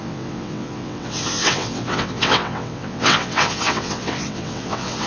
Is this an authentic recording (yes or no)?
no